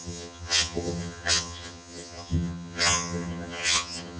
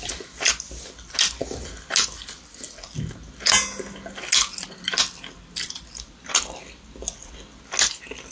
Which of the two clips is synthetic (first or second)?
first